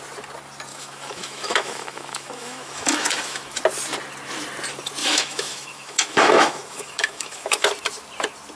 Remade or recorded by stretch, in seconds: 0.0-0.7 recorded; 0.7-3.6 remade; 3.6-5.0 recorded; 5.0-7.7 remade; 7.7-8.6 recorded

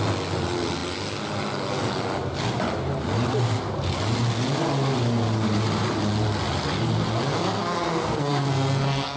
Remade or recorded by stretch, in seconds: 0.0-7.4 recorded; 7.4-9.2 remade

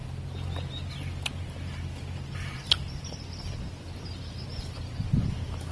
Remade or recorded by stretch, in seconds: 0.0-5.7 recorded

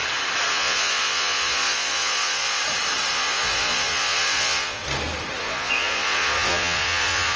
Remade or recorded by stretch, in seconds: 0.0-0.5 recorded; 0.5-2.6 remade; 2.6-3.1 recorded; 3.1-4.8 remade; 4.8-5.4 recorded; 5.4-7.4 remade

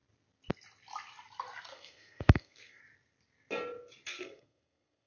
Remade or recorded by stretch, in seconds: 0.0-1.7 recorded; 1.7-2.8 remade; 2.8-4.1 recorded; 4.1-5.1 remade

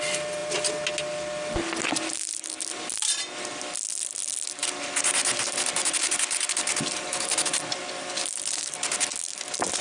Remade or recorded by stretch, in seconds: 0.0-9.8 recorded

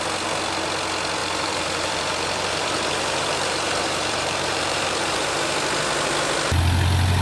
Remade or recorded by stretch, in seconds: 0.0-1.2 recorded; 1.2-5.5 remade; 5.5-7.2 recorded

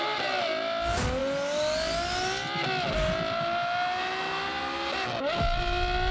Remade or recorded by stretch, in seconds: 0.0-6.1 recorded